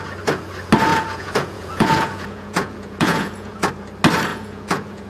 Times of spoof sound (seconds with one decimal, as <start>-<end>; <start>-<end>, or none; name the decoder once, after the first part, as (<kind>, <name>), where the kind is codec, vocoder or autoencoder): 0.9-3.7 (vocoder, Vocos); 4.3-5.1